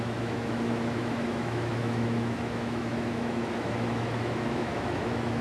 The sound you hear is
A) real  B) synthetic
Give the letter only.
B